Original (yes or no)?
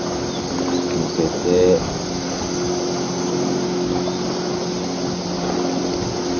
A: yes